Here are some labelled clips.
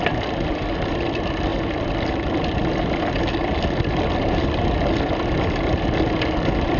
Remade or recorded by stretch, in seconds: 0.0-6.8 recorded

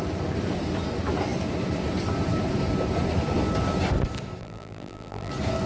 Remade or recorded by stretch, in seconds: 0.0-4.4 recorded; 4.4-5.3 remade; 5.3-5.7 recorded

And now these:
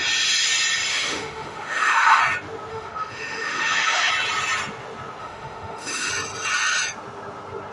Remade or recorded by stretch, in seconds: 0.0-0.9 recorded; 0.9-2.2 remade; 2.2-2.7 recorded; 2.7-4.1 remade; 4.1-5.2 recorded; 5.2-6.1 remade; 6.1-7.7 recorded

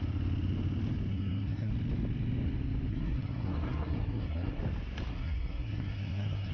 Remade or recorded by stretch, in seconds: 0.0-1.1 recorded; 1.1-1.7 remade; 1.7-2.9 recorded; 2.9-4.6 remade; 4.6-5.1 recorded; 5.1-6.5 remade

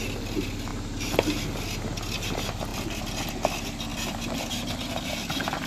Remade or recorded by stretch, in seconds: 0.0-2.7 recorded; 2.7-3.3 remade; 3.3-3.9 recorded; 3.9-4.5 remade; 4.5-5.7 recorded